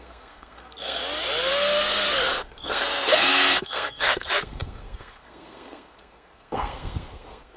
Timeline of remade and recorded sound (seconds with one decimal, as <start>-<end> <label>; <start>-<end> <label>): 0.0-1.0 remade; 1.0-1.5 recorded; 1.5-7.6 remade